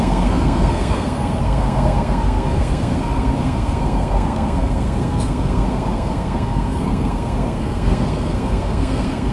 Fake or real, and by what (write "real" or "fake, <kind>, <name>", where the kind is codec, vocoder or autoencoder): fake, codec, SNAC